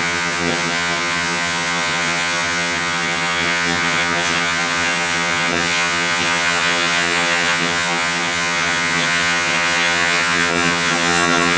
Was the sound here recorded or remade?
remade